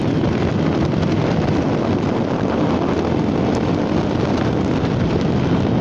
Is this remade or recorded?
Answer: recorded